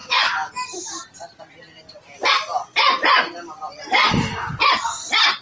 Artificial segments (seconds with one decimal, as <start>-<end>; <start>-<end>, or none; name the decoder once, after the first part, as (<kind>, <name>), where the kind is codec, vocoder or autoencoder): none

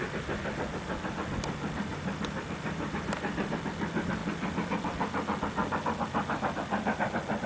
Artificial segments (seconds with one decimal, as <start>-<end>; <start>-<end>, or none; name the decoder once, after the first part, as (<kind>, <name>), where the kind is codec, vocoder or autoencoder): 1.9-3.5 (vocoder, BigVGAN v2)

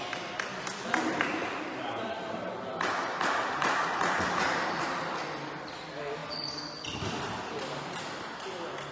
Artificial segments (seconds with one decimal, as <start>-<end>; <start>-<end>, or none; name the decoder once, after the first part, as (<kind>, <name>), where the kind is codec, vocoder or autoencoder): 1.1-4.8 (vocoder, BigVGAN v2)

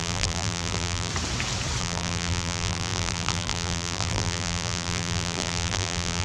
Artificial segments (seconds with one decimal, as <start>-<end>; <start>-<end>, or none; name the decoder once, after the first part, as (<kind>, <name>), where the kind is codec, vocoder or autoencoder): 0.0-1.1 (vocoder, BigVGAN v2); 1.8-6.2